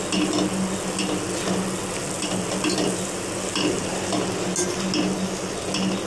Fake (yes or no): no